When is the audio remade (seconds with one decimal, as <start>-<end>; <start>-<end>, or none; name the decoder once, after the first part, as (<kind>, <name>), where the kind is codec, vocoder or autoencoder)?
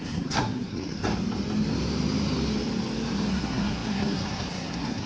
0.0-1.0 (codec, SNAC); 3.3-5.1